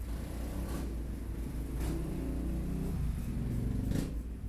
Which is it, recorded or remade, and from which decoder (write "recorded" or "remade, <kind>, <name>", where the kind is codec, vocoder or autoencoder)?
recorded